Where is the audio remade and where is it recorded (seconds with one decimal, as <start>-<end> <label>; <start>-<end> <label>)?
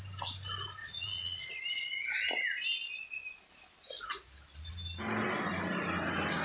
0.0-0.8 recorded; 0.8-1.5 remade; 1.5-6.4 recorded